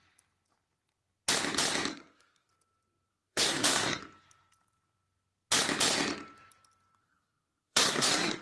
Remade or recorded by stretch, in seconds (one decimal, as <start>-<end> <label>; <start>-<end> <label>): 0.0-1.9 recorded; 1.9-2.5 remade; 2.5-3.1 recorded; 3.1-4.0 remade; 4.0-7.0 recorded; 7.0-8.4 remade